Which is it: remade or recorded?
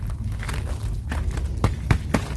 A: recorded